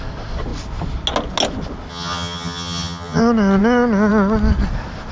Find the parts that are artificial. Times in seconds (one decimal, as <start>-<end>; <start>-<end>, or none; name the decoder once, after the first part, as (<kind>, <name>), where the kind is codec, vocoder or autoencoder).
1.9-3.2 (vocoder, HiFi-GAN)